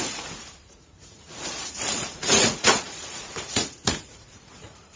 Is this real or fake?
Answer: fake